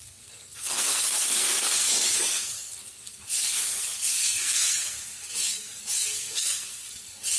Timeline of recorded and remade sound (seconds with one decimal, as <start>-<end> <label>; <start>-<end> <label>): 0.0-7.4 remade